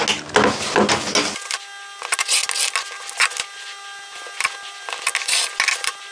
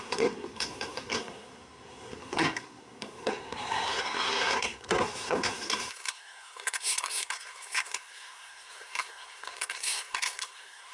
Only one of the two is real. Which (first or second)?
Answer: first